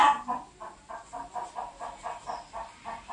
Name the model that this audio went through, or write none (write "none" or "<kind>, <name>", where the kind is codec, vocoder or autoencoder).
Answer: none